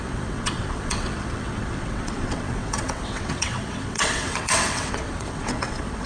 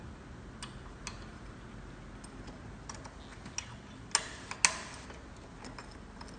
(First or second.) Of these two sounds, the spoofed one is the first